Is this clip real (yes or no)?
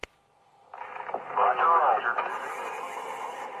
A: yes